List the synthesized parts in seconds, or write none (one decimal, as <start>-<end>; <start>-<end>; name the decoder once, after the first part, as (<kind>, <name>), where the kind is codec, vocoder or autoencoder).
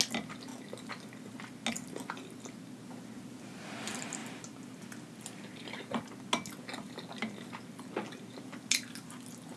none